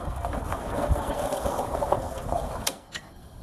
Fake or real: fake